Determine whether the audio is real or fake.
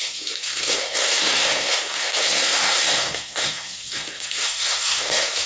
fake